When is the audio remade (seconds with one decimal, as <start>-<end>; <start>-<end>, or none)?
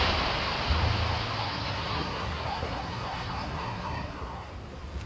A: 1.4-4.5